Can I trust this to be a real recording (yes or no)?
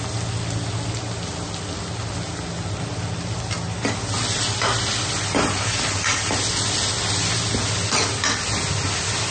yes